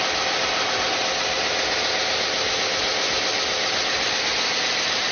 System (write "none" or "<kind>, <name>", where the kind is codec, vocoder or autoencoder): none